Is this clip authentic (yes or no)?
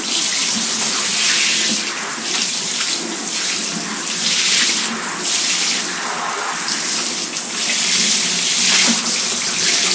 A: yes